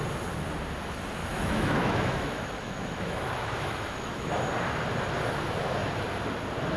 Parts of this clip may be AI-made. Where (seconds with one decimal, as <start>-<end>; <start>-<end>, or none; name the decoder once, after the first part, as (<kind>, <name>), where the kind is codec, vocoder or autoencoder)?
1.2-4.3 (autoencoder, DAC-VAE)